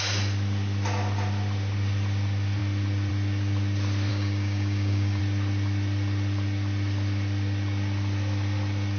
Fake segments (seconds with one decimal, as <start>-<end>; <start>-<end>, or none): 4.1-5.2